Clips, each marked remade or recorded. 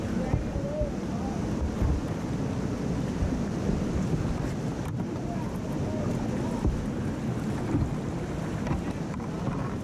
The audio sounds recorded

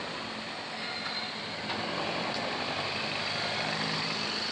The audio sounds remade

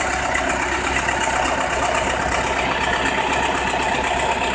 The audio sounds recorded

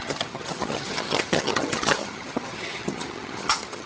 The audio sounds remade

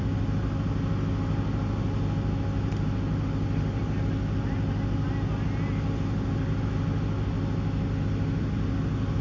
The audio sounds recorded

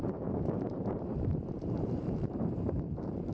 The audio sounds remade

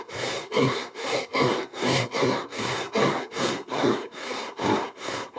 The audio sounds remade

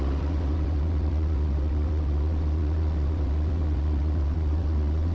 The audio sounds remade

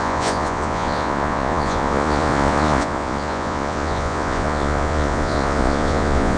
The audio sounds remade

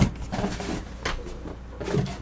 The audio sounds recorded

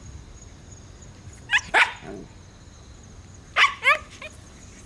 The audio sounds recorded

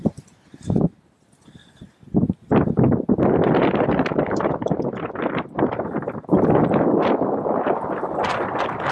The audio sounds recorded